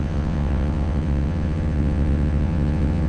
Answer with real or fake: fake